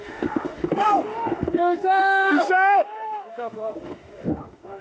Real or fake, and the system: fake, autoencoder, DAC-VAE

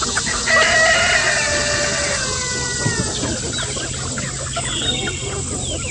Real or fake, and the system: real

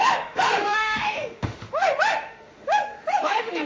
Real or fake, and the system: fake, autoencoder, DAC-VAE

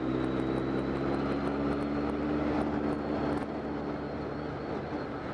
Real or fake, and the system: real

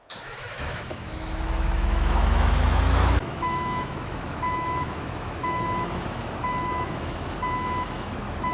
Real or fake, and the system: fake, autoencoder, DAC-VAE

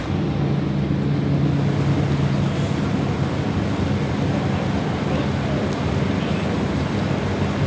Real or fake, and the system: real